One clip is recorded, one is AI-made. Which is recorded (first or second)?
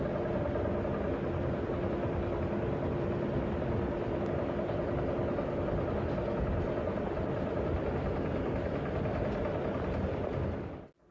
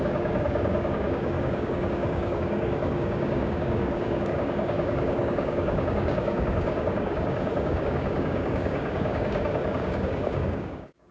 first